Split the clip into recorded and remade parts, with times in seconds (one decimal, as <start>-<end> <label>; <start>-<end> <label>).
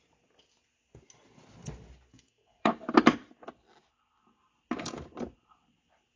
0.0-2.1 recorded; 2.1-2.7 remade; 2.7-6.2 recorded